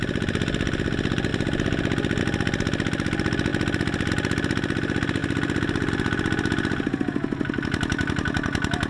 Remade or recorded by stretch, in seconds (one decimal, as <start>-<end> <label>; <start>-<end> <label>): 0.0-8.9 recorded

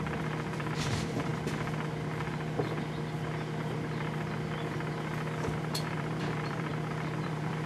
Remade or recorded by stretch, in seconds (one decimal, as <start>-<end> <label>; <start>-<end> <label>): 0.0-1.3 remade; 1.3-5.9 recorded; 5.9-6.7 remade; 6.7-7.2 recorded; 7.2-7.7 remade

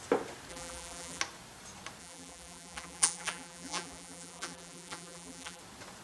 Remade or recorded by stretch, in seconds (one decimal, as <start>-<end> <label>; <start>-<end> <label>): 0.0-0.5 recorded; 0.5-1.2 remade; 1.2-2.0 recorded; 2.0-5.6 remade; 5.6-6.0 recorded

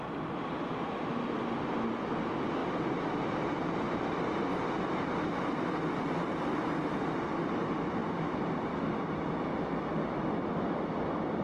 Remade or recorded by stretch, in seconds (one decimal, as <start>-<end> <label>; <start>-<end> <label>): 0.0-2.6 recorded; 2.6-6.5 remade; 6.5-8.0 recorded; 8.0-9.6 remade; 9.6-11.4 recorded

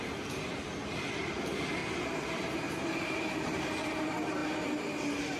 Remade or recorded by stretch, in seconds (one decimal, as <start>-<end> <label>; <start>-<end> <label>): 0.0-1.8 recorded; 1.8-3.6 remade; 3.6-5.4 recorded